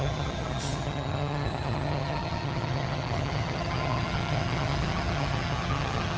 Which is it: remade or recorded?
remade